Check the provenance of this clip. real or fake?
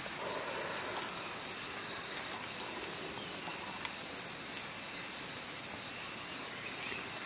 real